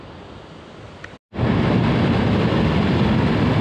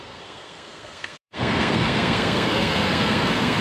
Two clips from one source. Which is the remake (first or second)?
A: second